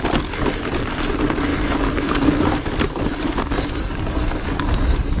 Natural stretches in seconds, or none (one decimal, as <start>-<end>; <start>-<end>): 0.0-5.2